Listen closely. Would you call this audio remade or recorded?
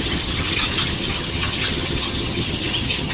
remade